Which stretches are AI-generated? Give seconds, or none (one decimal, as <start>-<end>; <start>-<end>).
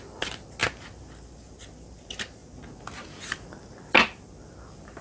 none